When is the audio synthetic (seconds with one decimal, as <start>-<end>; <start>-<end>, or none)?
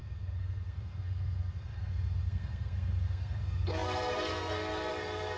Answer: 0.0-5.4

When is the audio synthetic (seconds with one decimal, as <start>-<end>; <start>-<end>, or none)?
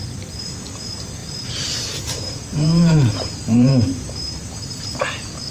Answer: 1.2-4.5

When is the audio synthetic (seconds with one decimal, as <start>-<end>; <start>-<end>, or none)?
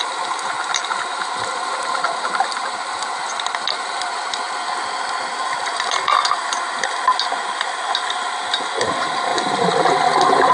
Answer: none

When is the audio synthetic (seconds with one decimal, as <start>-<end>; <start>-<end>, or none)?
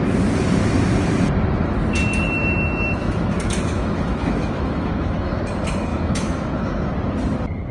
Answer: 3.0-5.4; 5.9-6.9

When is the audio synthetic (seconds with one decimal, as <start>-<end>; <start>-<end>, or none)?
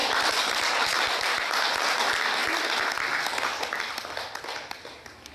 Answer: none